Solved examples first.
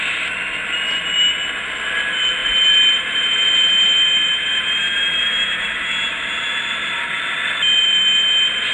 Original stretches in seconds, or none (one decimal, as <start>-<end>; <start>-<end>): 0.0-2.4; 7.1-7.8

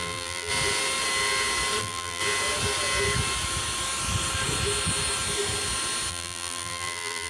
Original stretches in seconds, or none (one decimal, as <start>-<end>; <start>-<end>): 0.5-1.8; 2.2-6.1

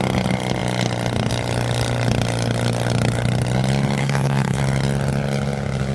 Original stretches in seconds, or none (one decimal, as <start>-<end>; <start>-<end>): 0.0-4.0; 4.6-5.9